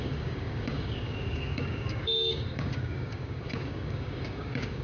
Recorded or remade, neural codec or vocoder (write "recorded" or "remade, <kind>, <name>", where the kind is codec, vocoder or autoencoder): remade, codec, DAC